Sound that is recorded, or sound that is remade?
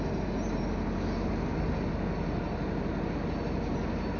recorded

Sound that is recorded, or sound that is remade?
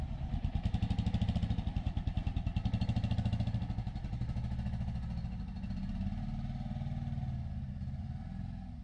recorded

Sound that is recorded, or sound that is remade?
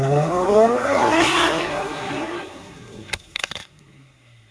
remade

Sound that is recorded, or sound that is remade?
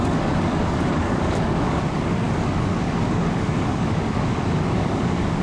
remade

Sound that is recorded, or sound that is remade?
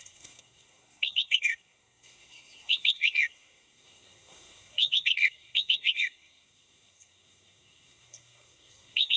remade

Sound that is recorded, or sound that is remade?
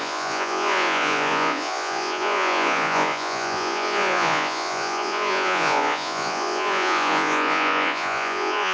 remade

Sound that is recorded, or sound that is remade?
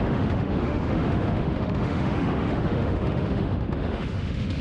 remade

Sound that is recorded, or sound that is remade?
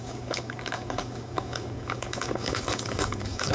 remade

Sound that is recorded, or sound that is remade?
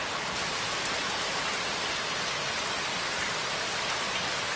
recorded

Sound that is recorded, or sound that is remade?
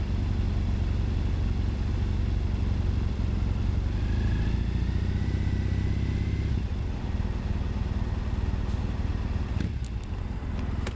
recorded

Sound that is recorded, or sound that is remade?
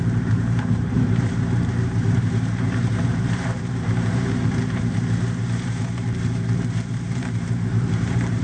remade